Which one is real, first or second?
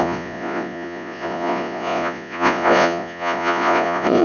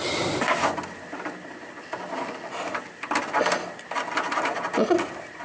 second